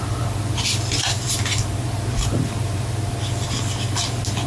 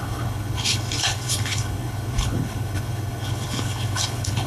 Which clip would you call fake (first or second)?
second